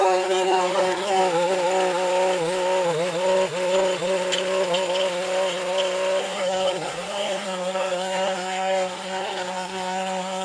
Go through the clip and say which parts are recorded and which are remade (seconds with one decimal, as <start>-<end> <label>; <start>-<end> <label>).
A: 0.0-1.2 remade; 1.2-6.2 recorded; 6.2-10.4 remade